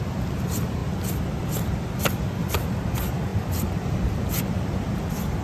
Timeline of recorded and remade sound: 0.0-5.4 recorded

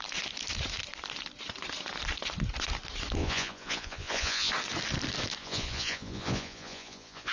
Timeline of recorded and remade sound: 0.0-3.2 recorded; 3.2-4.5 remade; 4.5-5.4 recorded; 5.4-7.3 remade

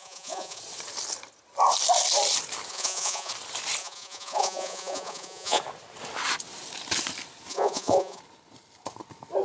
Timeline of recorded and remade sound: 0.0-0.6 remade; 0.6-2.7 recorded; 2.7-3.3 remade; 3.3-3.8 recorded; 3.8-5.6 remade; 5.6-7.5 recorded; 7.5-8.2 remade; 8.2-9.4 recorded

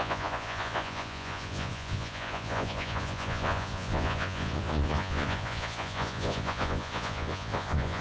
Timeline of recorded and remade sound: 0.0-8.0 remade

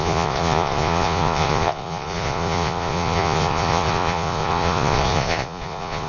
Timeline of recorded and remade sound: 0.0-6.1 remade